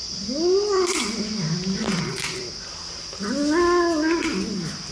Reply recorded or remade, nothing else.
recorded